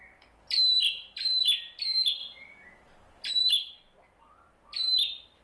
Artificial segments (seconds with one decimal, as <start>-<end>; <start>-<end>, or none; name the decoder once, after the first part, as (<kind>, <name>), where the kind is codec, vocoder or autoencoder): none